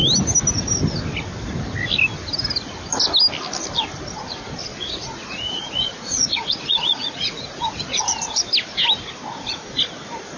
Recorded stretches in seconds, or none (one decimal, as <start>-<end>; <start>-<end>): 0.0-4.7; 8.0-10.4